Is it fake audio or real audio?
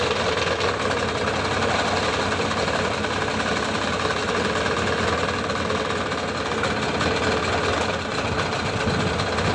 real